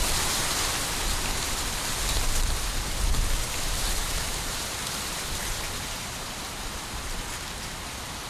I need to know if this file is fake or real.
real